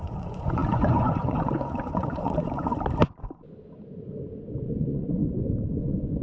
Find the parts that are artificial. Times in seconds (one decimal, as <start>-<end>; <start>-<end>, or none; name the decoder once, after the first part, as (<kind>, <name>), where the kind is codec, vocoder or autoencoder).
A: 0.0-2.7 (vocoder, Vocos); 4.6-5.2; 5.8-6.2